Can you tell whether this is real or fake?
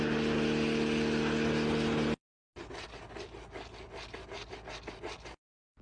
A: real